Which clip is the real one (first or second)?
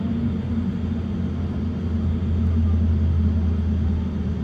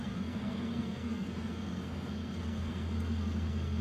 first